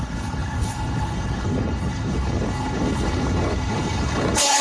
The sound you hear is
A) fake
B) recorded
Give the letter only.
A